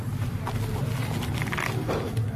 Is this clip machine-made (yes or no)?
no